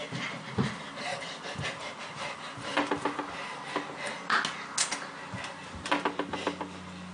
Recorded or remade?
recorded